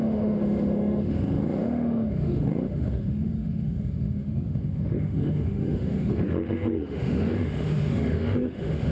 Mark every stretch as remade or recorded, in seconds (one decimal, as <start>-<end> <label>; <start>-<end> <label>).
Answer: 0.0-8.9 remade